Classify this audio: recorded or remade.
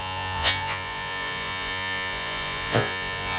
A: remade